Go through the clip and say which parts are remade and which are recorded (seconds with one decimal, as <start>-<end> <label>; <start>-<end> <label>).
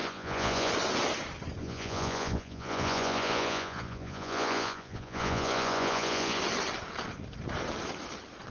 0.0-0.7 remade; 0.7-1.6 recorded; 1.6-6.4 remade; 6.4-8.5 recorded